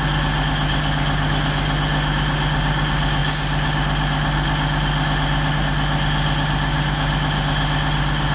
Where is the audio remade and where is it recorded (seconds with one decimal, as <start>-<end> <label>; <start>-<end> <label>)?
0.0-8.3 recorded